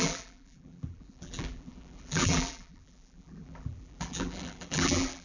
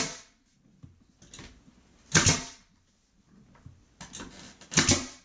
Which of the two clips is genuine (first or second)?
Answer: second